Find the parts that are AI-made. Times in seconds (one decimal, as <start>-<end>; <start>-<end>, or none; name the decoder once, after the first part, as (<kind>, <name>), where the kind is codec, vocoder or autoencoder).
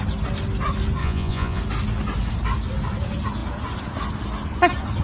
1.0-1.6 (vocoder, Vocos)